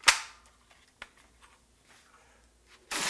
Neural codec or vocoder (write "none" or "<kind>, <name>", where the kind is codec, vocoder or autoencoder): none